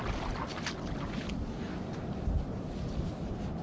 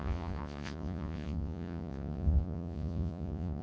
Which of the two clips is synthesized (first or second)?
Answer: second